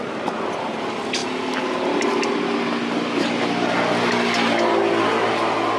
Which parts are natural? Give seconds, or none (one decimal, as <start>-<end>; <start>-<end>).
0.0-5.8